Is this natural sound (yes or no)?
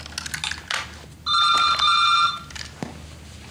yes